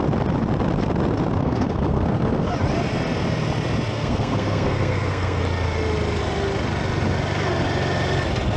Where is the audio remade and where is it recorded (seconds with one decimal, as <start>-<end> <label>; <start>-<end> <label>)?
0.0-1.4 recorded; 1.4-2.5 remade; 2.5-3.9 recorded; 3.9-5.4 remade; 5.4-8.6 recorded